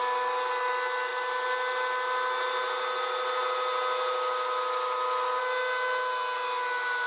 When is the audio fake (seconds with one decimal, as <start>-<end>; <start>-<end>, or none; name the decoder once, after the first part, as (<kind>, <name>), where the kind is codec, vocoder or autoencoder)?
none